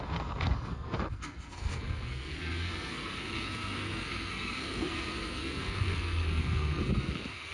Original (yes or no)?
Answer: no